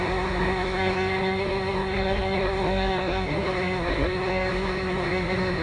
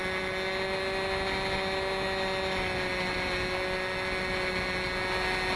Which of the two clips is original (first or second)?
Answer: second